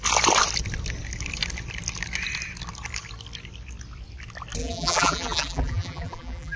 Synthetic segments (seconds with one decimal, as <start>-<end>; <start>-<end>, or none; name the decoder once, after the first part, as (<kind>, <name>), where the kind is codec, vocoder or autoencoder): 4.6-6.6 (vocoder, BigVGAN v2)